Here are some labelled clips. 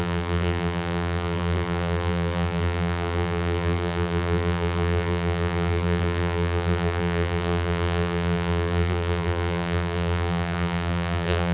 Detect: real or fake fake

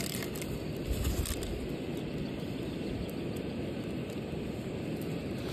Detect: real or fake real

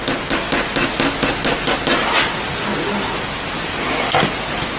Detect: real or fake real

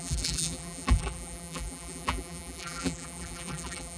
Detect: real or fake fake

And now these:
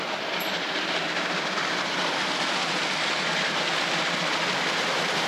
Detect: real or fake fake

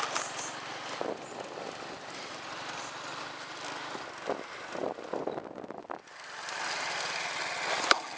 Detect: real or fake real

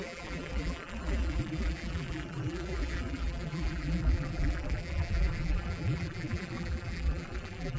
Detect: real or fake fake